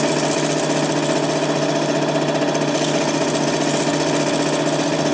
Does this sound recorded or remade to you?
recorded